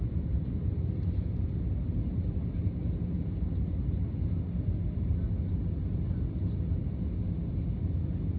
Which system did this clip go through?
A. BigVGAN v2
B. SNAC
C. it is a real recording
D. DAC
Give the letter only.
C